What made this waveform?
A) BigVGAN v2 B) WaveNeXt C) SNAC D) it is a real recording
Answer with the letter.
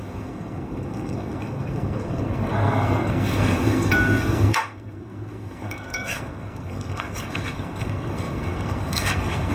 C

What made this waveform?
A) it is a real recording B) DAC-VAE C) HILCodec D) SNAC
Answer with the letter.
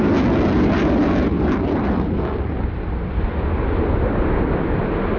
A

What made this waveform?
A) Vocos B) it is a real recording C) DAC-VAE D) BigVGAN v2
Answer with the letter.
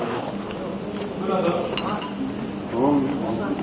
B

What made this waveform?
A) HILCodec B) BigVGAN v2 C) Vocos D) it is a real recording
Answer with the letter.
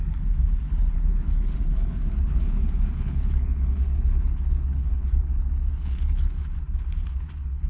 A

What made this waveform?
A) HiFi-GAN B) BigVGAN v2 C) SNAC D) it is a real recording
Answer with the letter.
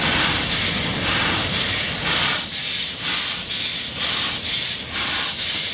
D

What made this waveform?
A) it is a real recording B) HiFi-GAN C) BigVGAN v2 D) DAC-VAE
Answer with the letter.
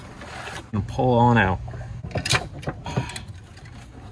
A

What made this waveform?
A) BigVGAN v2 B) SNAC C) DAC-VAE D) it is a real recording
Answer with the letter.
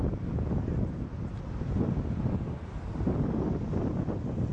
D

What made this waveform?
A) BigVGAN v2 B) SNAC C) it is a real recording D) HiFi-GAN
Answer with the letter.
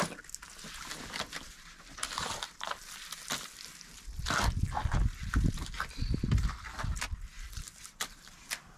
C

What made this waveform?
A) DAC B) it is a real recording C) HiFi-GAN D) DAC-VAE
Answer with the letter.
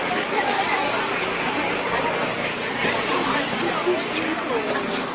A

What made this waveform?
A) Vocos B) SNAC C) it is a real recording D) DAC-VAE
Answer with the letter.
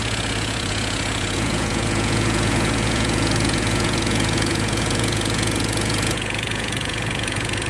A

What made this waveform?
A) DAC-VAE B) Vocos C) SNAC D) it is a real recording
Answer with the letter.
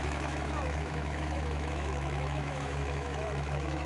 A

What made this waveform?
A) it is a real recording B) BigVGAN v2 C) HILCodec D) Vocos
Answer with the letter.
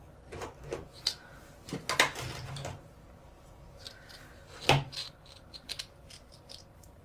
A